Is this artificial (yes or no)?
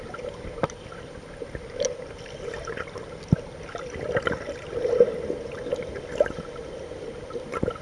no